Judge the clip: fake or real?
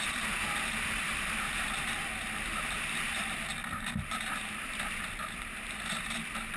fake